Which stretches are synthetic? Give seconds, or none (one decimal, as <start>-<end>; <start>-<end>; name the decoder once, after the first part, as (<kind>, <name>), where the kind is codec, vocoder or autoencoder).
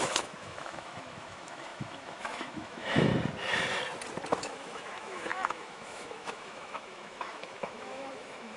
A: 0.0-3.1 (autoencoder, DAC-VAE); 4.4-8.6